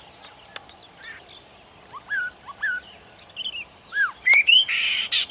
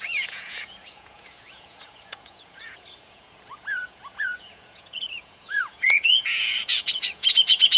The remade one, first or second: second